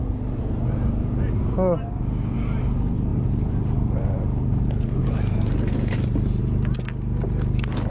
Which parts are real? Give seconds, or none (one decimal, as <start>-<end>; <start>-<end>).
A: 0.0-3.1; 6.4-7.9